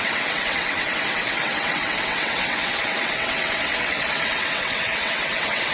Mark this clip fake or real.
fake